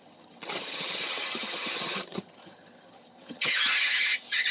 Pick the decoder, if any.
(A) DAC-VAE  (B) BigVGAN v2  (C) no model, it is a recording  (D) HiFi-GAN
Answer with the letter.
D